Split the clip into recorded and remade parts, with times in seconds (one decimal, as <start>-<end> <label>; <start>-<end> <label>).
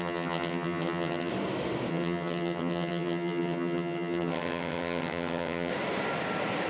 0.0-1.3 remade; 1.3-1.9 recorded; 1.9-5.7 remade; 5.7-6.7 recorded